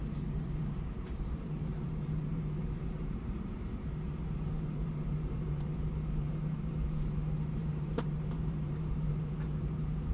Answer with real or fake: fake